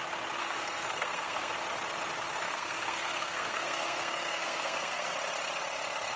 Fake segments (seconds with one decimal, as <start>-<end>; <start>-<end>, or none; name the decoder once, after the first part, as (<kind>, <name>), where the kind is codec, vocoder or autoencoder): 0.4-1.5 (codec, SNAC); 2.4-5.1